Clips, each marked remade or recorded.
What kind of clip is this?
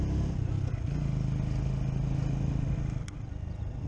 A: recorded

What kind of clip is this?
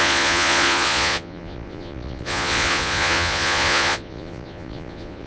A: remade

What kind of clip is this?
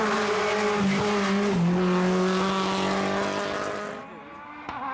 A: recorded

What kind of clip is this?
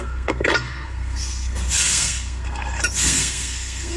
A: remade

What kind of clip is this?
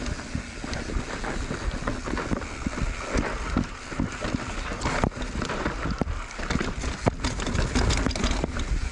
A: recorded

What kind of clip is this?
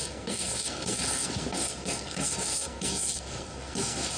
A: remade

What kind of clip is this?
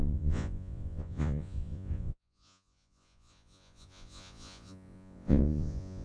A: remade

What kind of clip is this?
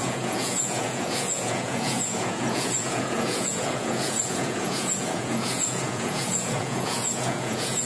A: remade